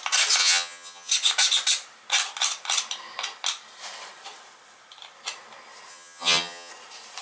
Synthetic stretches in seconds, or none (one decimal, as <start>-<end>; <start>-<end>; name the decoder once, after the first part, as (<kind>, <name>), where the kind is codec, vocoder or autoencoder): 0.4-1.1 (vocoder, HiFi-GAN); 5.9-6.7